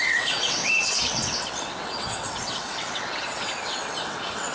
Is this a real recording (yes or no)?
no